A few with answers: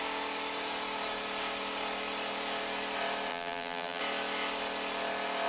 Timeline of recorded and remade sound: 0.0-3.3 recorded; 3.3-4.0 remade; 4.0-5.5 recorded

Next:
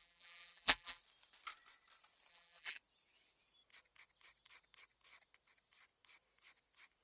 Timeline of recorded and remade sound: 0.0-1.0 remade; 1.0-2.3 recorded; 2.3-2.8 remade; 2.8-7.0 recorded

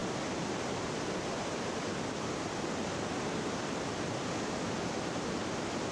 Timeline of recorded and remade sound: 0.0-5.9 recorded